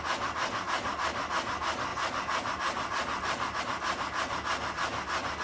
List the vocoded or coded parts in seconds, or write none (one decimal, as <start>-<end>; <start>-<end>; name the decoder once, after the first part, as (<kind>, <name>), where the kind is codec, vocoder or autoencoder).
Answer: none